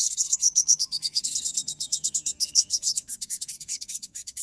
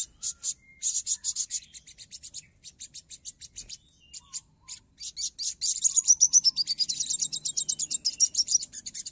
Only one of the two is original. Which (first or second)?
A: second